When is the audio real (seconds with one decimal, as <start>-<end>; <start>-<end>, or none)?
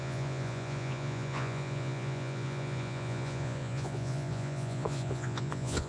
none